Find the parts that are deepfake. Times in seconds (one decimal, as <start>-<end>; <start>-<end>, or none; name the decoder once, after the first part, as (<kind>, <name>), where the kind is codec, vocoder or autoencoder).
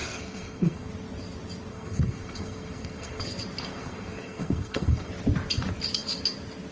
0.0-0.9 (codec, SNAC); 1.7-3.2; 3.7-5.1